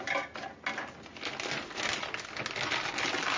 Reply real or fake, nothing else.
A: real